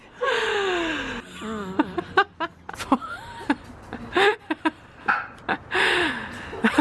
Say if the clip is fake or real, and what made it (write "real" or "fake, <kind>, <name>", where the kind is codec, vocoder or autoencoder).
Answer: real